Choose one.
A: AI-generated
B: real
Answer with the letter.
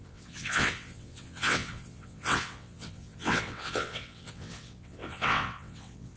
A